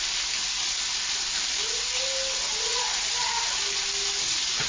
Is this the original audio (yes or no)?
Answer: yes